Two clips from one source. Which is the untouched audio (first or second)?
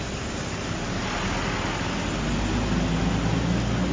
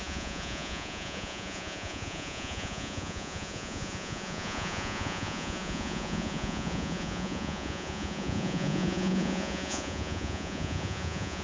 first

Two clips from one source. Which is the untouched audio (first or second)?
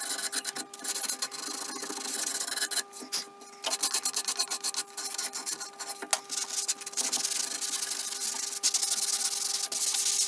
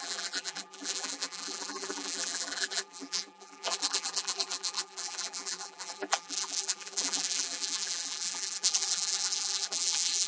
first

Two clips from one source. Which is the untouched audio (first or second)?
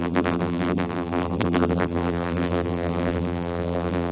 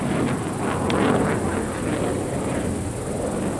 second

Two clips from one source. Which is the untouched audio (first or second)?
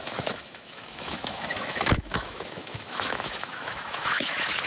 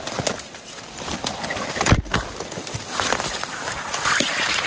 second